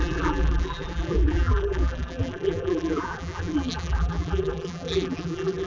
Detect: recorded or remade remade